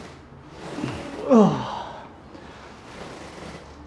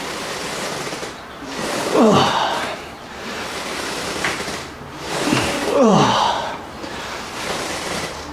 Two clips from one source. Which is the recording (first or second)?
first